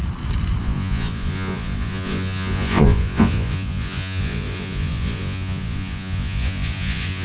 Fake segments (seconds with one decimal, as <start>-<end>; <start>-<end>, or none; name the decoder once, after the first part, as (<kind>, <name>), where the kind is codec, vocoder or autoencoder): 0.6-7.2 (vocoder, Vocos)